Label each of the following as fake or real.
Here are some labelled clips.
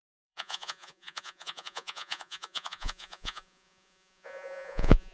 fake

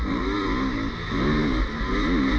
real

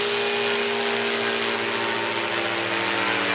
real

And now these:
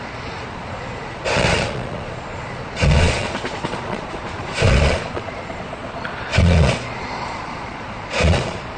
fake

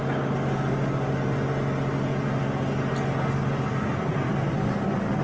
real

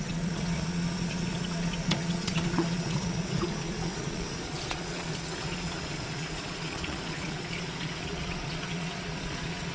fake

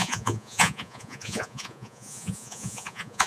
fake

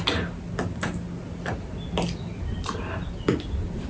real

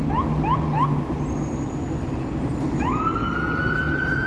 real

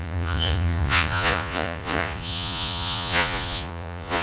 fake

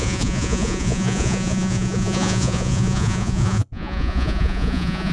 fake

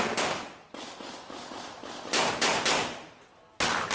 real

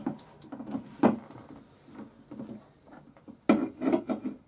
real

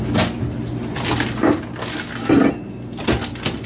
real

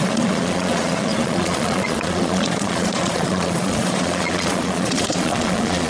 fake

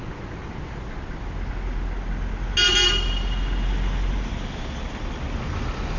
real